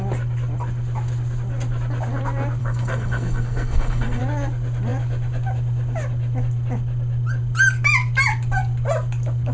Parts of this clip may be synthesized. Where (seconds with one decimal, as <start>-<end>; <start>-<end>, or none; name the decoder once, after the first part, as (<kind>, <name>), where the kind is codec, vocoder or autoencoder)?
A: 2.6-4.2 (codec, SNAC)

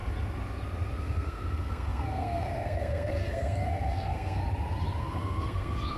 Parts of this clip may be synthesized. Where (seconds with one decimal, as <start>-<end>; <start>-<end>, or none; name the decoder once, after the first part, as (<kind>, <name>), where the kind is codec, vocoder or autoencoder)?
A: 1.0-4.4 (codec, SNAC); 5.0-6.0

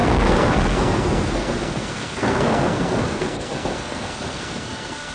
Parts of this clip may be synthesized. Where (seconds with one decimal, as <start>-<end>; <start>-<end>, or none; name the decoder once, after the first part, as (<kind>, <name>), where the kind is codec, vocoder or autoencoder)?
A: 0.0-5.1 (codec, SNAC)

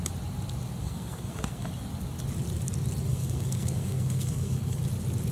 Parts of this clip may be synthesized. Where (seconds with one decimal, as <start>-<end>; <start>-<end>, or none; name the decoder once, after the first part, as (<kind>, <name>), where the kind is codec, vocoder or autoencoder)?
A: 0.8-1.7 (codec, SNAC); 3.1-4.8